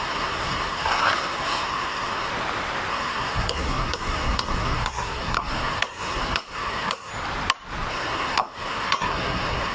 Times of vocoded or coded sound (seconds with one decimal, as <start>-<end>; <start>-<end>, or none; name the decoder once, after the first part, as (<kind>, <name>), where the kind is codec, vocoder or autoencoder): 0.0-2.3 (codec, SNAC); 2.9-7.1; 7.9-9.7